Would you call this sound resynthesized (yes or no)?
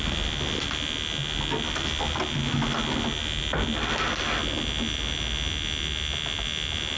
no